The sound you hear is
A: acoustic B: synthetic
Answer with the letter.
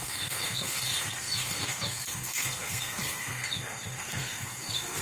B